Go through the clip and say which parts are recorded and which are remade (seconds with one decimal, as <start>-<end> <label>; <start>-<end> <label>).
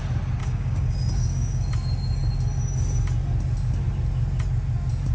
0.0-0.4 recorded; 0.4-1.7 remade; 1.7-5.1 recorded